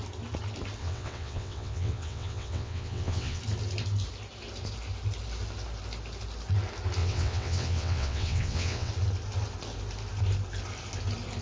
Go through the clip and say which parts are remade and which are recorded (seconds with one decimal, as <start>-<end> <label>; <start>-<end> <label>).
0.0-0.8 recorded; 0.8-3.4 remade; 3.4-7.0 recorded; 7.0-8.9 remade; 8.9-11.4 recorded